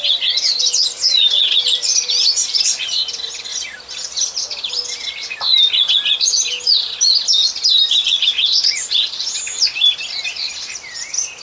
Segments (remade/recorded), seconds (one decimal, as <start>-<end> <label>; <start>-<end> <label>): 0.0-11.4 recorded